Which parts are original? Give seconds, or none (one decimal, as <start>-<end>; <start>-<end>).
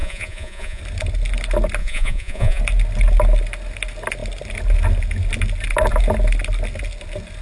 0.8-1.8; 2.6-7.4